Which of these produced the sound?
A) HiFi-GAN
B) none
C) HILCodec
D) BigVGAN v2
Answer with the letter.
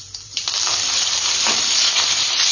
D